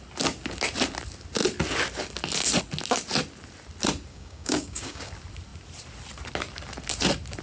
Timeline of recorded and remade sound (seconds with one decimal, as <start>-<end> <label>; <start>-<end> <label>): 0.0-4.1 recorded; 4.1-5.1 remade; 5.1-7.4 recorded